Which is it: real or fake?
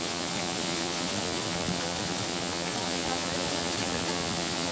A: fake